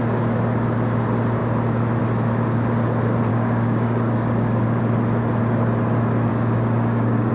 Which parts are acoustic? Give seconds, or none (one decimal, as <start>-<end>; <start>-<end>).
0.0-3.3; 4.8-6.3